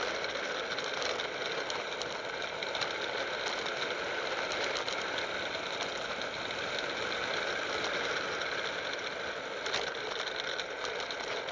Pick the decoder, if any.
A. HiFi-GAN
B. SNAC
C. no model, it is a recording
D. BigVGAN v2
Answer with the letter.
C